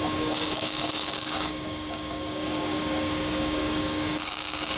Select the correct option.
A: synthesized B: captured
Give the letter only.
A